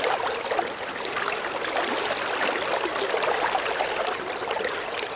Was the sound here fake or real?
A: real